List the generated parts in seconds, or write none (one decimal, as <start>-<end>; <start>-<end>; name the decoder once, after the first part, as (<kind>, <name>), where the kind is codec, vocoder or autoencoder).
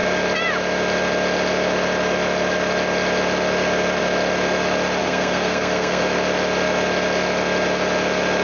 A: 5.0-6.0 (codec, SNAC)